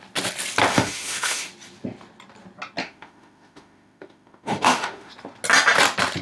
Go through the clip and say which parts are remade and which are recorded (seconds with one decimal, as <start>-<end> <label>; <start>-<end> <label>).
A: 0.0-0.7 recorded; 0.7-1.5 remade; 1.5-2.8 recorded; 2.8-5.1 remade; 5.1-6.2 recorded